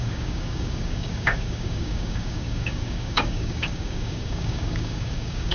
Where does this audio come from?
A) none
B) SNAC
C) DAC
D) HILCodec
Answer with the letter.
C